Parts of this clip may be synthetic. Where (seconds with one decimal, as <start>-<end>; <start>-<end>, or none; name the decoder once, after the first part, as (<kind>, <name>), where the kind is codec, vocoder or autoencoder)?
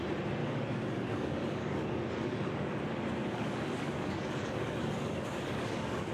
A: 0.4-2.8 (codec, DAC); 3.2-6.1